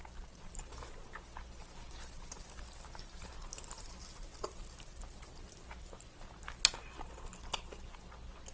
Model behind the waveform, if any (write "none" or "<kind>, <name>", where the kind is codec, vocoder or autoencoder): none